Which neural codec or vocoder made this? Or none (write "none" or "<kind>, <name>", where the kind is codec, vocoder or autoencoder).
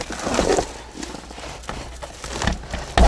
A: none